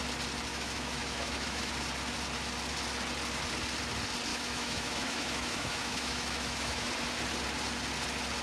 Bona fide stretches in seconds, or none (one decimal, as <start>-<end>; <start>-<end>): 0.0-0.5; 1.7-4.3; 6.9-8.4